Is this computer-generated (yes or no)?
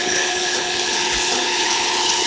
yes